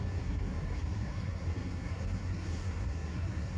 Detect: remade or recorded remade